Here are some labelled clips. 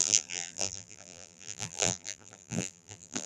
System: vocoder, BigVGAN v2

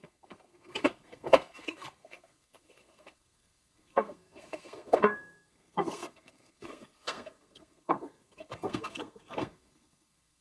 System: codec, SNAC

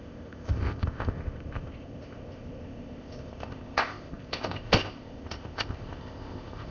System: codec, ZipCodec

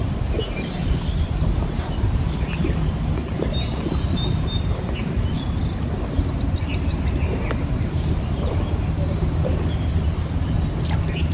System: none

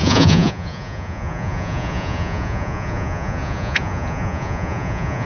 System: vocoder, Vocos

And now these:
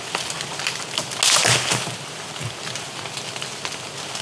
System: none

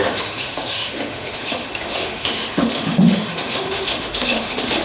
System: autoencoder, DAC-VAE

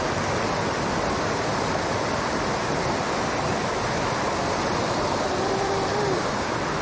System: none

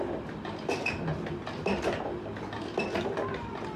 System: none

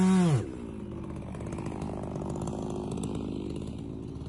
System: none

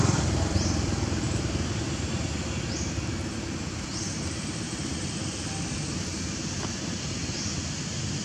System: vocoder, BigVGAN v2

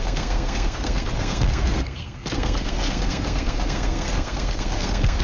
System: codec, SNAC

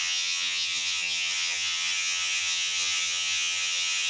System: vocoder, HiFi-GAN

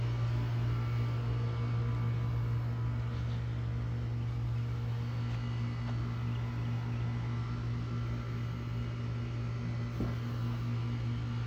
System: none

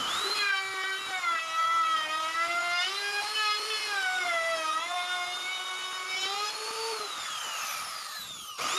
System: none